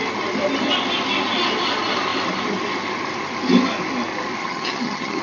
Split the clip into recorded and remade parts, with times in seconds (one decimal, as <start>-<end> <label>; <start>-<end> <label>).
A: 0.0-4.4 recorded; 4.4-5.2 remade